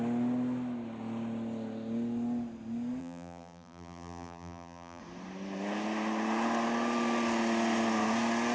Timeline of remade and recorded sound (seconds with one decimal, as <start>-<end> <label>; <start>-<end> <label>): 0.0-3.0 recorded; 3.0-5.0 remade; 5.0-8.5 recorded